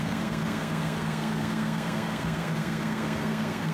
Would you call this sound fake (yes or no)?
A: yes